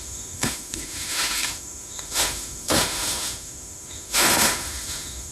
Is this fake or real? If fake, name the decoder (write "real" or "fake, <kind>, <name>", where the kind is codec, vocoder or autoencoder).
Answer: fake, autoencoder, DAC-VAE